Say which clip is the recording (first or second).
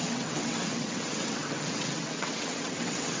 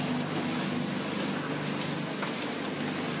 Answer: second